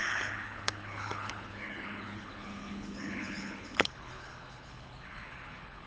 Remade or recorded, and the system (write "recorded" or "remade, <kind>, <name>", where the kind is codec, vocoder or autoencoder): remade, codec, HILCodec